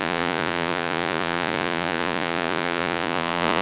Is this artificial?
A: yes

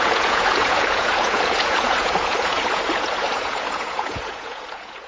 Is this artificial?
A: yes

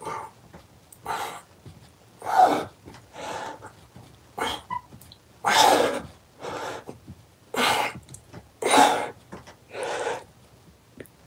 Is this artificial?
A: no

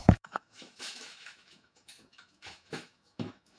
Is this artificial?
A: yes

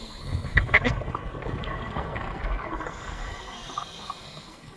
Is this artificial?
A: yes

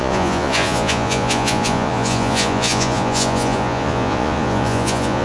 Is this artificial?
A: yes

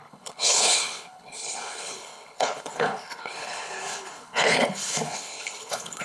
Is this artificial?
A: yes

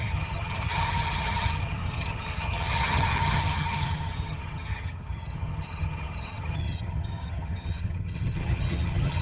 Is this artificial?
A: yes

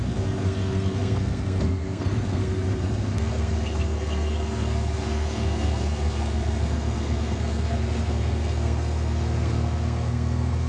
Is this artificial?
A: yes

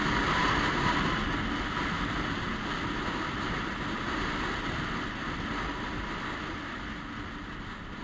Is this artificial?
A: no